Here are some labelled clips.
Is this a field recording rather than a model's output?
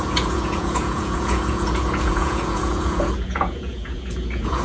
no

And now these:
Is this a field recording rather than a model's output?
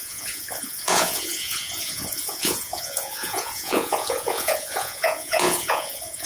no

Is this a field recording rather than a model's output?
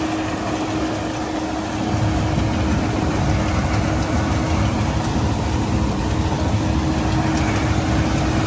yes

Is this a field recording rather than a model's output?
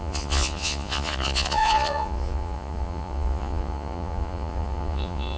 no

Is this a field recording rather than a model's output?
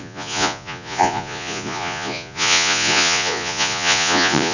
no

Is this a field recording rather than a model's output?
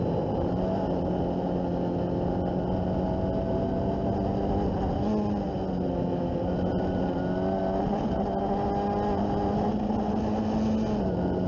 yes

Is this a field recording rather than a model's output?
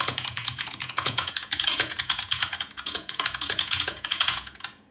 no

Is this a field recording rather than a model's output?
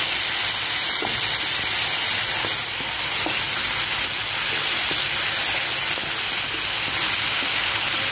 yes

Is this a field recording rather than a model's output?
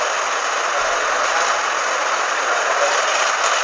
yes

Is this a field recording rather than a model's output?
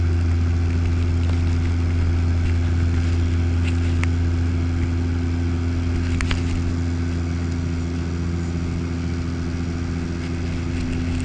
yes